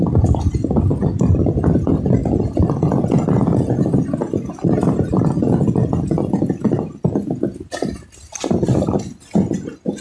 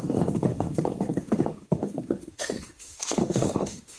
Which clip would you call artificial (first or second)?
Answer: second